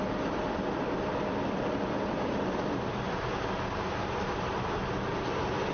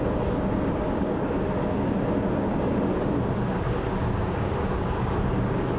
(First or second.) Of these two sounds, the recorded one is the first